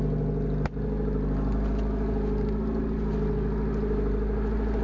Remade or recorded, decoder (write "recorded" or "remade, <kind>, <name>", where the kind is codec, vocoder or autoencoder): recorded